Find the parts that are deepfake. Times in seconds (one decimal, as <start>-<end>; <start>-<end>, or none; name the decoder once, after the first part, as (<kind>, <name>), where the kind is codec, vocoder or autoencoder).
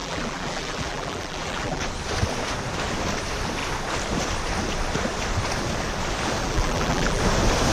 0.0-1.8 (vocoder, BigVGAN v2); 6.4-7.2